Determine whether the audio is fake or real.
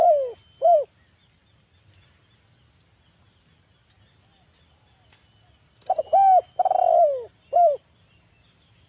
real